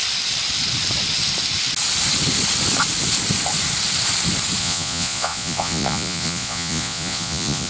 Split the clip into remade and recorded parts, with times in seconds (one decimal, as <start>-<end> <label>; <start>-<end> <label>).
0.0-4.6 recorded; 4.6-7.7 remade